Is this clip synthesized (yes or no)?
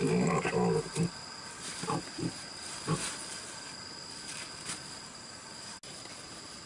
no